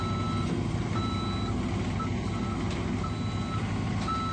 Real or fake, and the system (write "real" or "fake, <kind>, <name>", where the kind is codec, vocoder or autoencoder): real